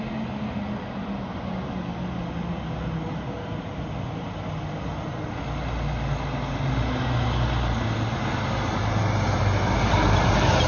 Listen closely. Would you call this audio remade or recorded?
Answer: recorded